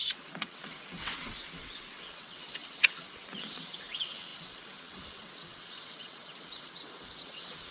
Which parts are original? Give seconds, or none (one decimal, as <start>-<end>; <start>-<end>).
none

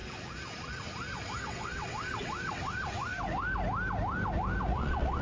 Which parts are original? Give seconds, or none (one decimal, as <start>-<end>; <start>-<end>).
0.0-1.4; 3.1-4.7

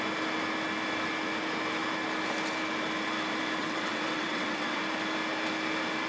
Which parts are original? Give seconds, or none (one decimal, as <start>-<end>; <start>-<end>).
0.0-3.6; 4.8-6.1

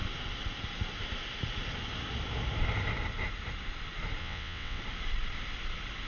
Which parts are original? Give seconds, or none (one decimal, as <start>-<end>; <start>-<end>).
0.0-4.2; 4.8-6.1

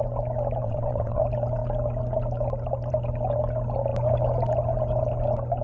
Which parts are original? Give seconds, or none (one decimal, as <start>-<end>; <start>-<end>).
0.0-0.6; 1.2-5.6

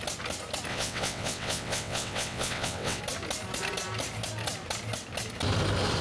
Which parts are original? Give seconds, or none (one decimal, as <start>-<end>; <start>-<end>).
0.0-0.7; 3.0-6.0